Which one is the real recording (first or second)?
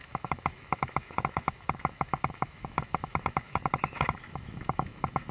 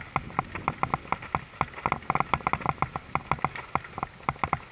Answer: second